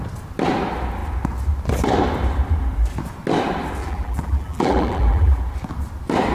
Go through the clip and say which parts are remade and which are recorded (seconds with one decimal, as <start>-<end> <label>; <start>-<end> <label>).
0.0-3.8 recorded; 3.8-5.4 remade; 5.4-6.3 recorded